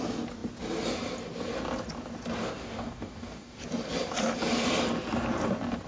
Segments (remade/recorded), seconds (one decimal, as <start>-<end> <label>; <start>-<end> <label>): 0.0-2.4 recorded; 2.4-3.6 remade; 3.6-5.9 recorded

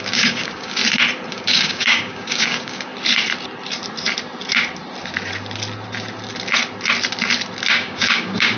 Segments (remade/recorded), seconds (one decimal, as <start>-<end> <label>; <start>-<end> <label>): 0.0-0.8 remade; 0.8-1.3 recorded; 1.3-2.9 remade; 2.9-7.7 recorded; 7.7-8.6 remade

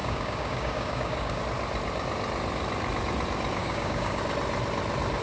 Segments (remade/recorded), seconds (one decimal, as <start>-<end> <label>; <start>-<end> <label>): 0.0-1.4 remade; 1.4-3.6 recorded; 3.6-4.2 remade; 4.2-5.2 recorded

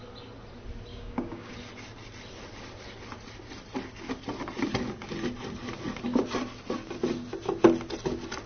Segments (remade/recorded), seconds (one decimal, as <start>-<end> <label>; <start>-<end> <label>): 0.0-0.9 recorded; 0.9-1.5 remade; 1.5-8.5 recorded

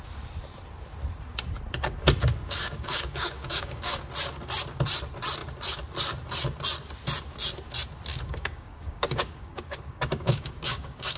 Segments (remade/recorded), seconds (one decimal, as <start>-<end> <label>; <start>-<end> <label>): 0.0-2.4 recorded; 2.4-4.0 remade; 4.0-8.1 recorded; 8.1-11.2 remade

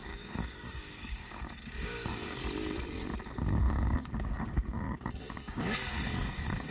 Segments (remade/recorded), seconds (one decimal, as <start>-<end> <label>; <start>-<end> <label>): 0.0-2.4 remade; 2.4-3.6 recorded; 3.6-6.7 remade